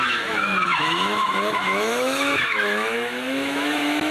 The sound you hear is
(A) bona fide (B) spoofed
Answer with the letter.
B